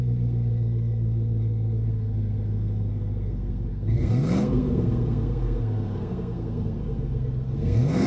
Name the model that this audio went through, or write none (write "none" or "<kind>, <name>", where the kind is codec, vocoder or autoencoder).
codec, SNAC